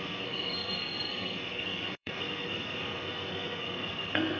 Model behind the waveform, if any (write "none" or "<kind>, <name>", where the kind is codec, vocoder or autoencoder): codec, SNAC